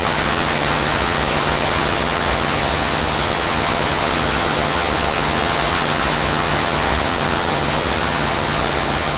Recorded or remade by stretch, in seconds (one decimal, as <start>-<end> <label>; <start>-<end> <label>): 0.0-9.2 remade